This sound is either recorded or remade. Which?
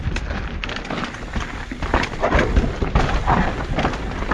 recorded